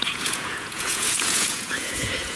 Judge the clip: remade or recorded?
remade